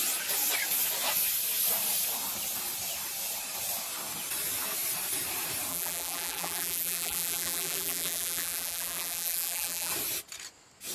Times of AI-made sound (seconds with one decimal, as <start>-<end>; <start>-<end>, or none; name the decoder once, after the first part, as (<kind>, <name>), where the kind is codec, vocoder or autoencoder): 5.7-9.9 (vocoder, BigVGAN v2)